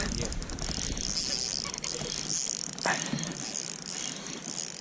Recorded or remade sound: recorded